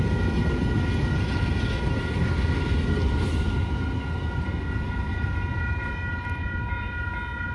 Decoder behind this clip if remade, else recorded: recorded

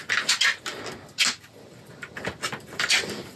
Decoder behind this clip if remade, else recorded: recorded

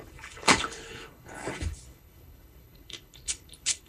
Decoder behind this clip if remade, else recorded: remade, codec, HILCodec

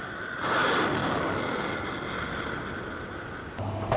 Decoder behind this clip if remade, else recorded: recorded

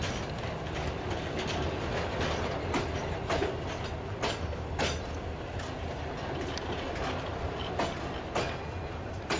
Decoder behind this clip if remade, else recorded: recorded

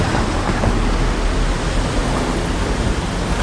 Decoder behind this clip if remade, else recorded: recorded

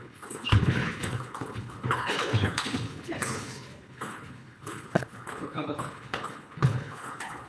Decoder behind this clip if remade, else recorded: remade, codec, HILCodec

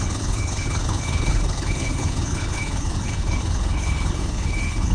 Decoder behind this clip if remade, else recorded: remade, codec, HILCodec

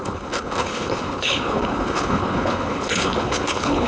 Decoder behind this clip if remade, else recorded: remade, codec, HILCodec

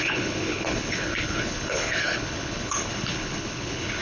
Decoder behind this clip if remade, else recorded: remade, codec, HILCodec